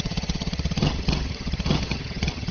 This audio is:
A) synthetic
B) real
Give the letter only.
A